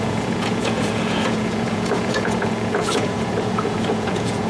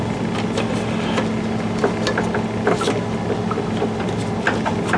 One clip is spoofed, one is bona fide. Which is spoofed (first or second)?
first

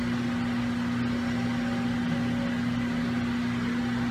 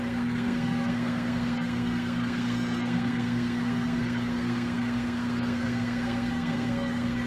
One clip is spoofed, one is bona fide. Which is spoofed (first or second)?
second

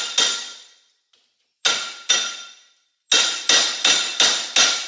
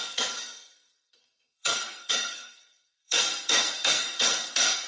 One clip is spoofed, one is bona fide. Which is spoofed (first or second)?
second